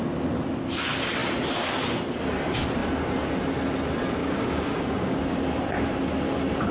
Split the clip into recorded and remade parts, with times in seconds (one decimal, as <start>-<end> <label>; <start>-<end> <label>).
0.0-4.2 recorded; 4.2-5.2 remade; 5.2-6.7 recorded